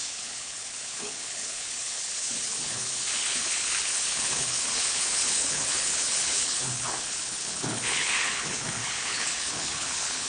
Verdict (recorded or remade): remade